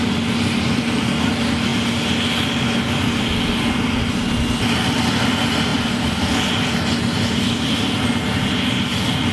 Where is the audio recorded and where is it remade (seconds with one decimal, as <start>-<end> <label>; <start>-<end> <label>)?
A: 0.0-5.7 recorded; 5.7-6.3 remade; 6.3-9.3 recorded